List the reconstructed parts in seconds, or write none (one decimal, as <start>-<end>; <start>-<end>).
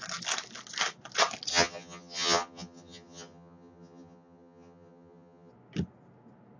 1.5-5.5